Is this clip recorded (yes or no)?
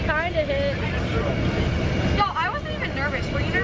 yes